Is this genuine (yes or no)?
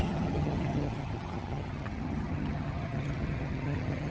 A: no